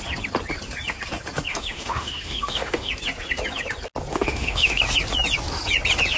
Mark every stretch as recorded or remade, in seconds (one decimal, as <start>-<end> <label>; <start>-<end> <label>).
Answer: 0.0-1.5 recorded; 1.5-2.9 remade; 2.9-4.1 recorded; 4.1-4.8 remade; 4.8-6.2 recorded